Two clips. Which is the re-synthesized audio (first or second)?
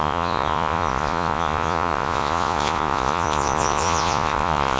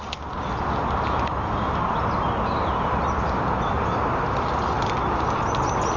first